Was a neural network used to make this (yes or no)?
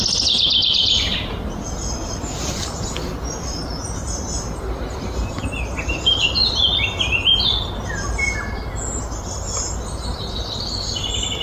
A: no